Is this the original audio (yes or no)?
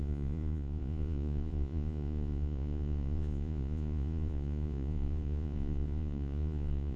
no